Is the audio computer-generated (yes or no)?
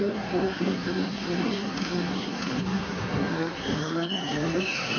yes